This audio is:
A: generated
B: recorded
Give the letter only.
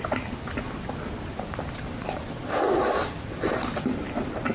B